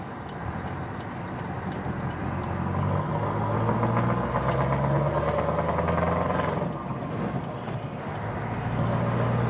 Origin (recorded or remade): recorded